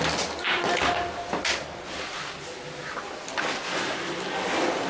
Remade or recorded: recorded